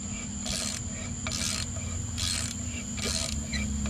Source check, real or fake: real